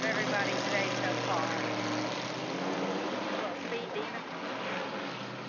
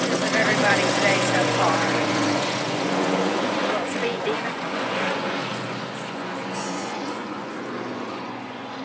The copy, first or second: second